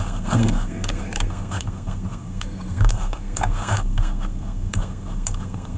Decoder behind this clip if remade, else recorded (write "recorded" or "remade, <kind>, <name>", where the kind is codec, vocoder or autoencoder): remade, codec, SNAC